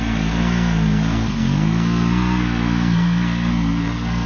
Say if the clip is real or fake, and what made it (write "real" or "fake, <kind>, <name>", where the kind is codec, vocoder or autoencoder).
fake, codec, SNAC